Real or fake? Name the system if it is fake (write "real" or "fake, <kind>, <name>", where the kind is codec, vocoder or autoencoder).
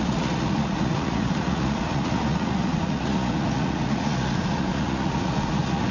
fake, vocoder, Vocos